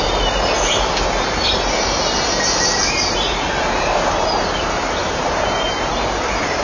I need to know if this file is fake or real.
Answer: fake